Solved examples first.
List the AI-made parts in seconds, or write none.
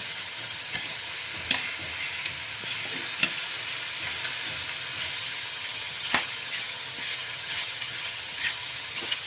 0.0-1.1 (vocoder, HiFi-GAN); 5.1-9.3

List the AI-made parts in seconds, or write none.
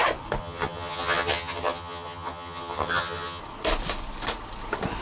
0.4-3.4 (vocoder, HiFi-GAN)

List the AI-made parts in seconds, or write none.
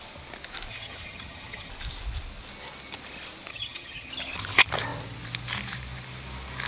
0.7-1.7 (vocoder, HiFi-GAN); 3.5-4.1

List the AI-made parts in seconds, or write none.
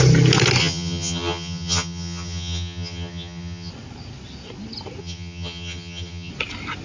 0.6-3.7 (vocoder, HiFi-GAN); 5.0-6.3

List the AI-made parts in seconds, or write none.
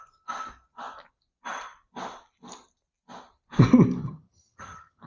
4.0-5.1 (vocoder, HiFi-GAN)